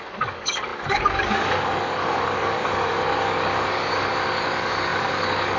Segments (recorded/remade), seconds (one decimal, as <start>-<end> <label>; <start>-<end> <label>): 0.0-5.6 remade